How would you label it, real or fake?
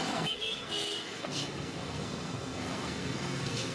fake